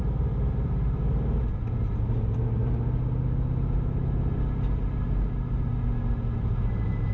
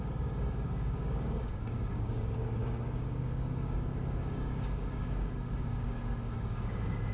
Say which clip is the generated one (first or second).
second